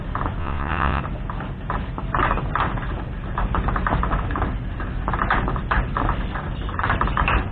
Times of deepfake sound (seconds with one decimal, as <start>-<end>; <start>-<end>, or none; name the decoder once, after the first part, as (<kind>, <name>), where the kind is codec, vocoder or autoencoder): 0.4-1.0 (vocoder, WaveNeXt)